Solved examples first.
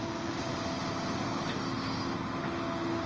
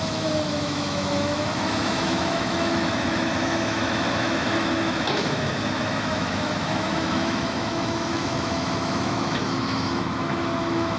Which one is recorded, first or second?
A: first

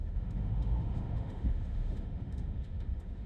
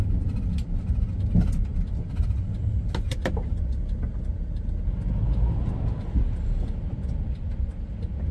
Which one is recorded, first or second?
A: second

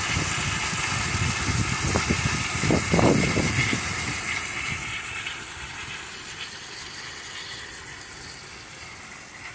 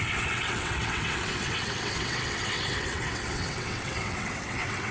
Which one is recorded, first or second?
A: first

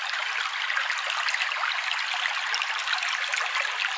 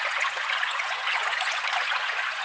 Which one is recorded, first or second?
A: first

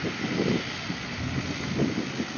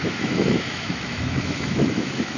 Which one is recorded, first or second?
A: first